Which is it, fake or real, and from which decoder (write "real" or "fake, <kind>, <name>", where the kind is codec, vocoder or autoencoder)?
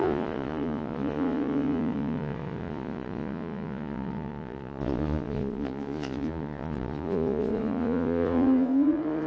fake, vocoder, Vocos